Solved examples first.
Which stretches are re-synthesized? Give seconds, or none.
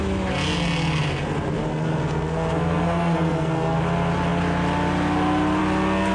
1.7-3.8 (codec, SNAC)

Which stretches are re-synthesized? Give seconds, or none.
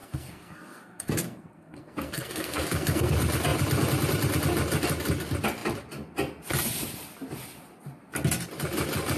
0.0-3.1 (codec, SNAC)